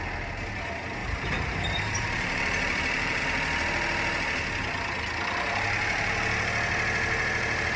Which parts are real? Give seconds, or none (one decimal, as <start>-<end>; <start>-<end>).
0.0-1.0; 3.2-7.8